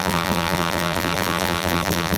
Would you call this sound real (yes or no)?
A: no